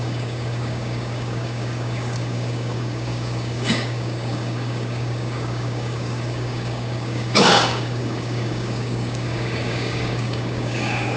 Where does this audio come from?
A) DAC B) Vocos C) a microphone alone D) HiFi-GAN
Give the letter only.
A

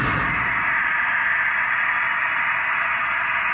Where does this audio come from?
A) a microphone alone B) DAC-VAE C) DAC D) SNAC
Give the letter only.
A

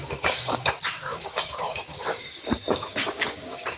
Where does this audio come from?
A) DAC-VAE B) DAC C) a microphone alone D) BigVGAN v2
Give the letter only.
B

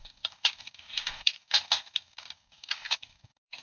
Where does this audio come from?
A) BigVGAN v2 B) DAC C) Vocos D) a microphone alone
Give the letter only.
B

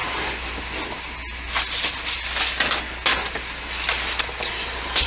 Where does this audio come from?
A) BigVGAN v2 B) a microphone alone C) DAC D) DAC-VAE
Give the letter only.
B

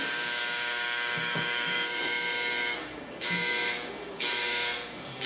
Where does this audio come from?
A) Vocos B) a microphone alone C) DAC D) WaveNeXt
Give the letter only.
C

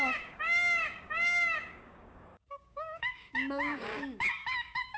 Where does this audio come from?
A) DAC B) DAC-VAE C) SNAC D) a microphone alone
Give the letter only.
A